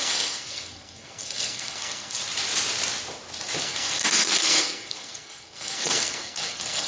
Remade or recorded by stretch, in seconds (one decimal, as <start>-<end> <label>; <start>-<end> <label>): 0.0-2.2 remade; 2.2-3.6 recorded; 3.6-6.9 remade